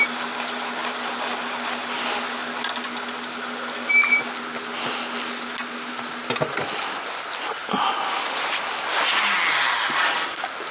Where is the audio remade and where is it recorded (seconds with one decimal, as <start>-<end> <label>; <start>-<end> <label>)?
0.0-10.7 recorded